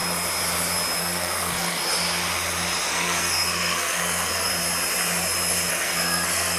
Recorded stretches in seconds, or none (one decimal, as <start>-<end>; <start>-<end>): 0.0-1.0; 1.8-2.9; 4.5-5.7